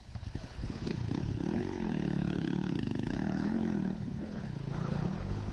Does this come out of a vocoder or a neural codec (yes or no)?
yes